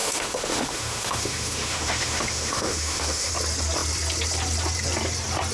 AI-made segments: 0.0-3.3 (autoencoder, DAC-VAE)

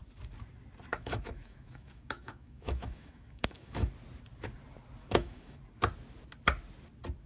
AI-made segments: 0.9-3.9 (autoencoder, DAC-VAE); 5.0-5.6